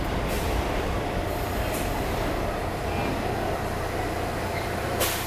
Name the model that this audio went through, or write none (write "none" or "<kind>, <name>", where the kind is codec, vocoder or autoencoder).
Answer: vocoder, BigVGAN v2